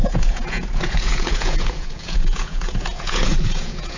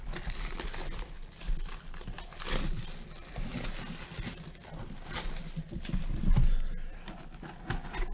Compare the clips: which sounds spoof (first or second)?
first